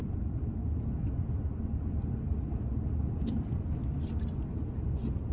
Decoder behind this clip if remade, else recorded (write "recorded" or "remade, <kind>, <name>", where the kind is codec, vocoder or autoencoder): recorded